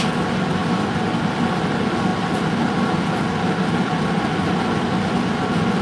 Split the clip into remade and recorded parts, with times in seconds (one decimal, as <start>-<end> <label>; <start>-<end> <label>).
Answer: 0.0-5.8 recorded